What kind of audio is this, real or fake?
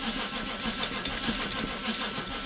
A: real